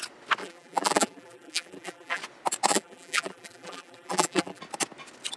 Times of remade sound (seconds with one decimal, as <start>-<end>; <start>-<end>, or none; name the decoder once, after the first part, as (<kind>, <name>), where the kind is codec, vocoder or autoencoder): 0.4-2.2 (vocoder, BigVGAN v2); 2.7-4.6